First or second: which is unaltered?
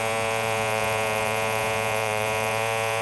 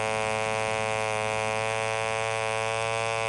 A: second